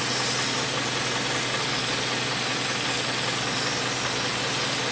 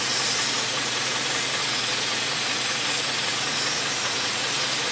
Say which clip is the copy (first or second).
second